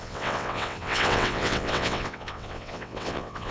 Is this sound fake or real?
fake